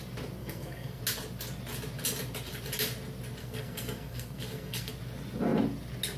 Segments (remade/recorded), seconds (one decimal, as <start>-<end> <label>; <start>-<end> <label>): 0.0-0.4 recorded; 0.4-1.0 remade; 1.0-3.4 recorded; 3.4-4.9 remade; 4.9-6.2 recorded